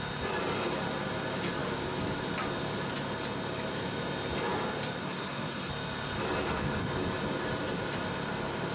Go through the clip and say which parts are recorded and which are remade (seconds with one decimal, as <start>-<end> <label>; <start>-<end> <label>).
0.0-5.0 recorded; 5.0-5.7 remade; 5.7-8.7 recorded